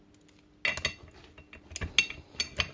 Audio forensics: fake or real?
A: real